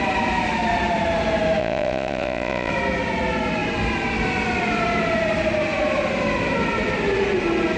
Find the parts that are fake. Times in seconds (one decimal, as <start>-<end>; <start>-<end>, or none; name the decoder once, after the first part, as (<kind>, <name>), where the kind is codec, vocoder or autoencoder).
1.6-2.7 (vocoder, Vocos)